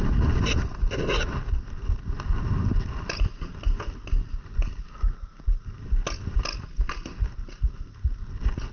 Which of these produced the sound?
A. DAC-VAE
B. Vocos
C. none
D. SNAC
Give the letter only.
C